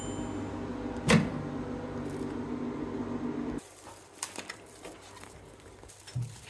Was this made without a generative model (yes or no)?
yes